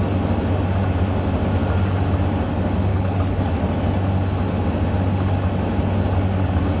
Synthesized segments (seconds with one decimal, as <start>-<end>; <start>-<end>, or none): 2.9-3.6